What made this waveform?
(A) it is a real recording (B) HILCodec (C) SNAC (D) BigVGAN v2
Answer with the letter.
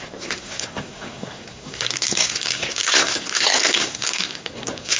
C